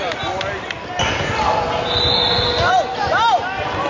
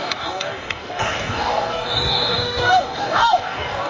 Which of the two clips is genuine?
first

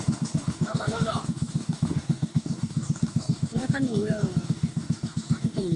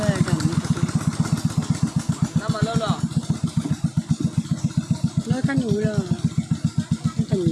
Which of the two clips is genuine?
second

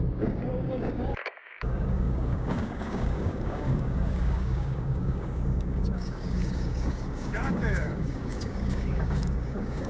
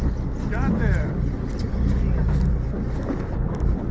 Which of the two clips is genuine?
second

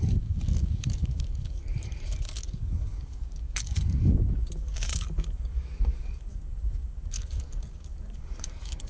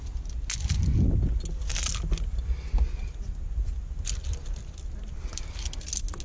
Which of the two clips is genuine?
second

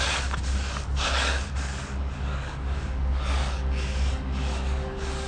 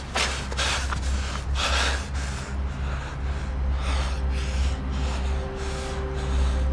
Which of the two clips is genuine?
second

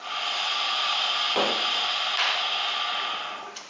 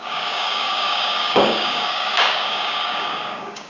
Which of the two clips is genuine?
first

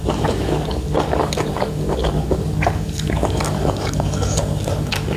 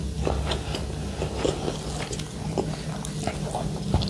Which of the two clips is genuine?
second